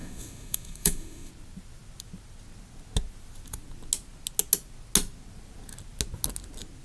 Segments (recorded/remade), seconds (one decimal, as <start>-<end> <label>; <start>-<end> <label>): 0.0-1.3 remade; 1.3-6.8 recorded